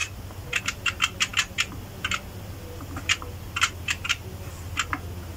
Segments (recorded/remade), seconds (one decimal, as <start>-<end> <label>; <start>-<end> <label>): 0.0-5.4 recorded